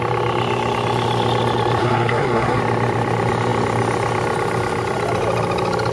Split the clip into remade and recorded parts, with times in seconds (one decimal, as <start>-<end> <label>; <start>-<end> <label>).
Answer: 0.0-1.8 recorded; 1.8-2.6 remade; 2.6-5.9 recorded